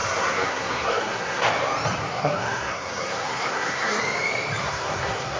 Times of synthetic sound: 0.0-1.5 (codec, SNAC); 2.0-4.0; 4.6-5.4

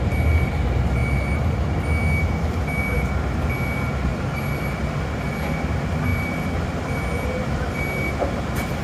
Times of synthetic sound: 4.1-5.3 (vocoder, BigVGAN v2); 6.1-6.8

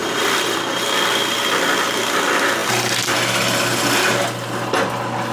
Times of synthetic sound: 0.0-2.0 (vocoder, BigVGAN v2)